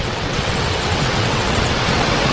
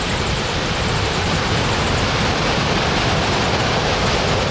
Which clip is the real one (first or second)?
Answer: second